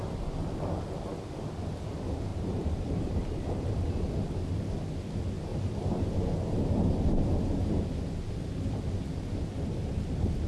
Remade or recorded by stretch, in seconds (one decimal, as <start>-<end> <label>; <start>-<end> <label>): 0.0-2.3 recorded; 2.3-3.2 remade; 3.2-5.5 recorded; 5.5-8.0 remade; 8.0-10.5 recorded